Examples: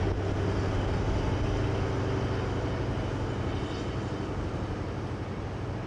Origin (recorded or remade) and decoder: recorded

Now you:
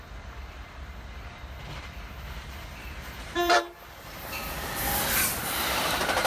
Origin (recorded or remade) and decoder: remade, vocoder, BigVGAN v2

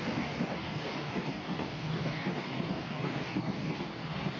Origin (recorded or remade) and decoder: remade, codec, DAC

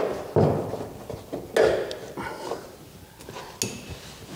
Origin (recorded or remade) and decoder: recorded